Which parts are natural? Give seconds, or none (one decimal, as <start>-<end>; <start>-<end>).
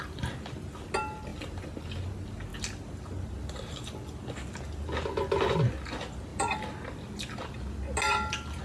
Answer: 0.0-1.3; 2.1-6.3; 7.4-8.6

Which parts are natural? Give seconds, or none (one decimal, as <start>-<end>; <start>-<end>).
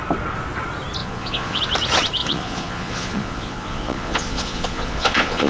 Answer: 0.0-1.0; 1.6-2.2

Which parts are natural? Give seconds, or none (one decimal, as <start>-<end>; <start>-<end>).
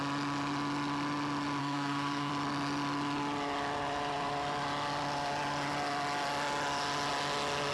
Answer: 0.0-1.6; 2.3-7.7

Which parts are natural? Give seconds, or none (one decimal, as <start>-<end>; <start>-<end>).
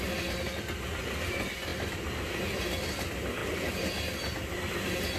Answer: 0.0-3.4; 4.7-5.2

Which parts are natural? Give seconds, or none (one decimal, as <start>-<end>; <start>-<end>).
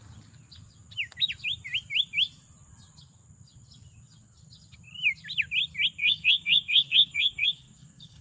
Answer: 0.0-6.0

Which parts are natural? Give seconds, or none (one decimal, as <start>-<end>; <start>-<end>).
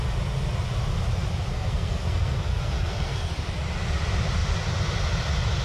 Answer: 0.0-1.5; 3.3-5.6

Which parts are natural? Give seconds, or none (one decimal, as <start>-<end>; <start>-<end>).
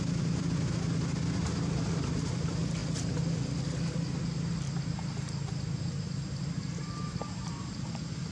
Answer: 0.0-8.3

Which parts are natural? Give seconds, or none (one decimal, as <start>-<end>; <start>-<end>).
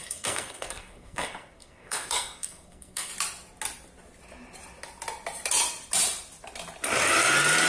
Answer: 3.1-7.7